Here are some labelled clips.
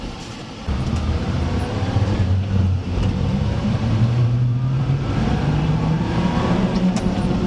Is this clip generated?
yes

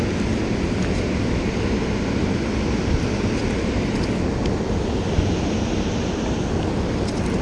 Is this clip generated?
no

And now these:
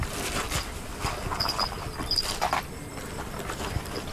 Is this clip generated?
yes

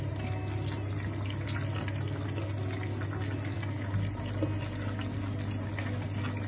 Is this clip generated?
no